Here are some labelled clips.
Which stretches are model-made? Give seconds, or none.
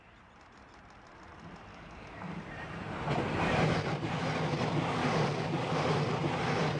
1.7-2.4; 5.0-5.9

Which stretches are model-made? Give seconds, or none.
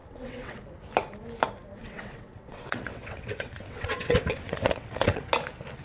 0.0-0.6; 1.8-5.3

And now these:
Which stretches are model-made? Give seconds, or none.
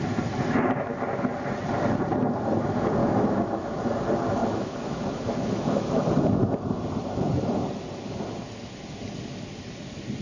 3.0-3.8; 4.4-6.1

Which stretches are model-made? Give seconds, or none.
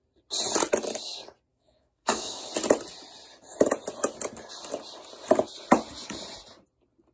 1.5-2.5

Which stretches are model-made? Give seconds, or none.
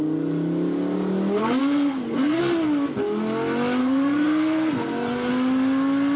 1.6-2.4; 3.8-5.3